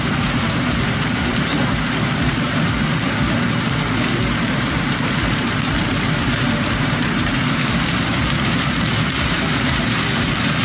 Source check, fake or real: fake